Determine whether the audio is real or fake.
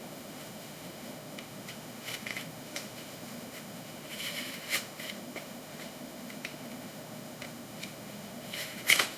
fake